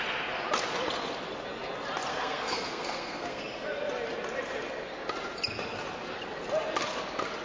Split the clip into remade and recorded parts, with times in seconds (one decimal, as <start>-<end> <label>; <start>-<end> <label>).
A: 0.0-2.1 recorded; 2.1-3.4 remade; 3.4-7.4 recorded